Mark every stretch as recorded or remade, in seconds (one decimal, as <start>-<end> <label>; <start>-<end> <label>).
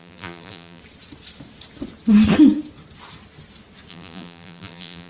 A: 0.0-0.8 remade; 0.8-3.9 recorded; 3.9-5.1 remade